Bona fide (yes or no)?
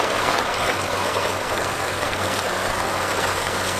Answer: no